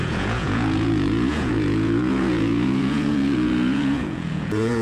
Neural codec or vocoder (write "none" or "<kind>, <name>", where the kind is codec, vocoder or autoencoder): vocoder, Vocos